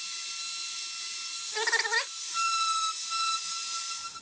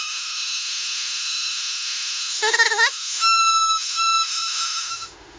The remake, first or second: second